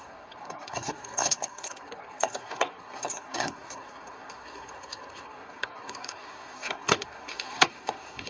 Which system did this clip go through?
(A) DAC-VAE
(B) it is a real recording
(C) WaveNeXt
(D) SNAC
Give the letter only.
D